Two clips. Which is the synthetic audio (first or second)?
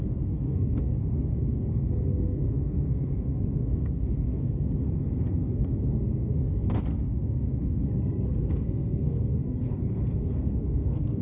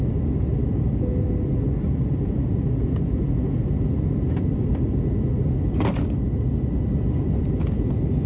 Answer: first